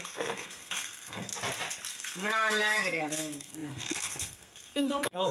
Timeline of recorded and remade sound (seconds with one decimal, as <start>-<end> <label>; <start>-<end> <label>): 0.0-1.3 remade; 1.3-1.9 recorded; 1.9-5.3 remade